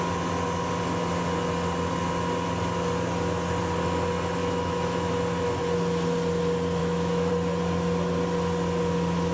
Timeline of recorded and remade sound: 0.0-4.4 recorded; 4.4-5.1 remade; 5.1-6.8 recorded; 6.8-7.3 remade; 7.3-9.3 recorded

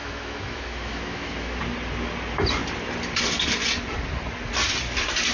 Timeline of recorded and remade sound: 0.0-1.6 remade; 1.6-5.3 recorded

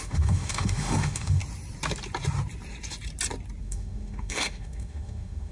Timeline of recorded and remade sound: 0.0-1.4 remade; 1.4-3.6 recorded; 3.6-5.5 remade

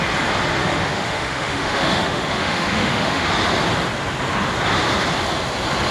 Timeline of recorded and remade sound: 0.0-0.6 recorded; 0.6-3.3 remade; 3.3-5.9 recorded